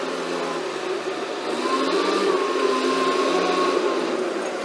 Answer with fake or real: real